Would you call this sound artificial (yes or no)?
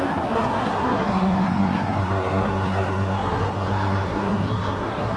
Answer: yes